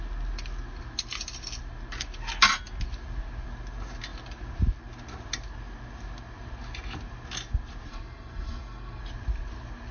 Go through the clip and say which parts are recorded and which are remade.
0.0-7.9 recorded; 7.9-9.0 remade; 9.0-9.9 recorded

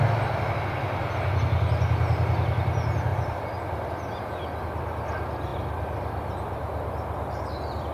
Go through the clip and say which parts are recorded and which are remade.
0.0-7.9 recorded

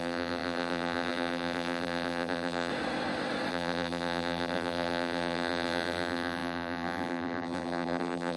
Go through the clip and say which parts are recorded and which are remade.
0.0-2.7 remade; 2.7-3.5 recorded; 3.5-8.4 remade

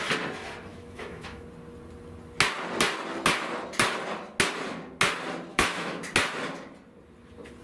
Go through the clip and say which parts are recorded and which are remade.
0.0-0.7 recorded; 0.7-1.4 remade; 1.4-5.5 recorded; 5.5-6.0 remade; 6.0-7.6 recorded

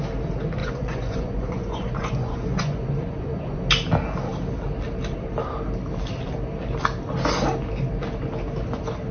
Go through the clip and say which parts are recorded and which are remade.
0.0-0.6 recorded; 0.6-3.6 remade; 3.6-9.1 recorded

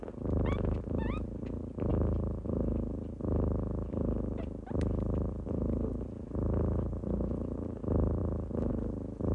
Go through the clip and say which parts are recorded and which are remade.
0.0-9.3 recorded